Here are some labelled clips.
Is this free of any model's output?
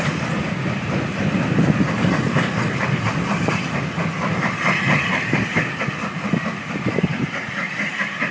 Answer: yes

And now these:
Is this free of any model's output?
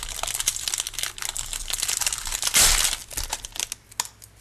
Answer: yes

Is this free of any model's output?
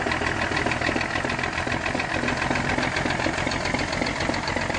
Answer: yes